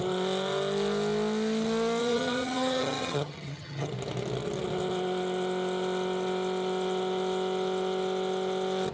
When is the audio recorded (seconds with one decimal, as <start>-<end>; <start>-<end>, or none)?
0.0-2.0; 3.9-8.9